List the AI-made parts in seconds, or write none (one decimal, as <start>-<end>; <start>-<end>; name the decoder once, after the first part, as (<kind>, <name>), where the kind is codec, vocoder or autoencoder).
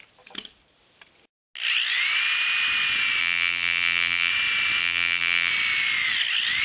3.2-4.3 (vocoder, BigVGAN v2); 4.8-5.5